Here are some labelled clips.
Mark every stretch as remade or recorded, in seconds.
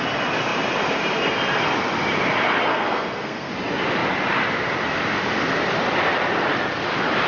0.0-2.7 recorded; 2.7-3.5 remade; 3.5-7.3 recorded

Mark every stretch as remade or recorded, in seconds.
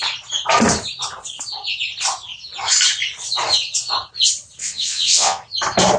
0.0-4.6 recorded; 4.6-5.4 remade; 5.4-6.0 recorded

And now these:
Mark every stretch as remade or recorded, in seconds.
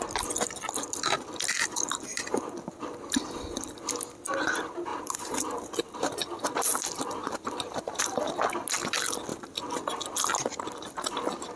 0.0-4.9 recorded; 4.9-5.6 remade; 5.6-7.2 recorded; 7.2-8.3 remade; 8.3-11.6 recorded